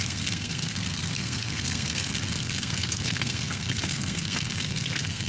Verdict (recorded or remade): remade